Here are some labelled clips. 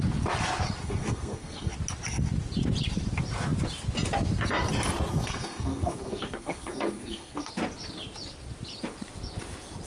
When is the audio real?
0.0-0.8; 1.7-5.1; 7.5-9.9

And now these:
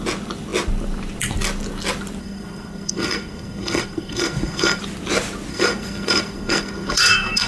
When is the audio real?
0.0-2.2; 4.8-5.5

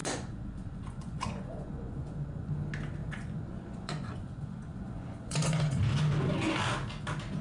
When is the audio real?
2.5-3.0; 5.8-7.4

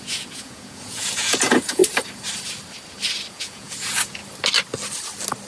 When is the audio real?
1.8-3.3; 4.2-5.5

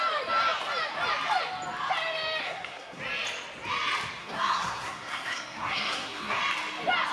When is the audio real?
0.0-2.4; 3.0-4.2; 6.4-7.1

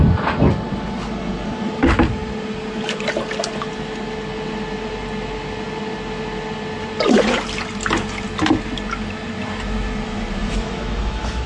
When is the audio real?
0.0-10.4